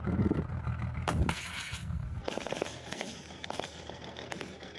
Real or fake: fake